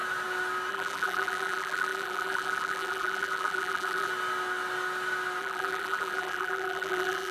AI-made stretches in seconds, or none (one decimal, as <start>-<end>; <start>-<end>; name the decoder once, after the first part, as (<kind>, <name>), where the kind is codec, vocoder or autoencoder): 0.7-4.1 (vocoder, BigVGAN v2); 5.4-7.3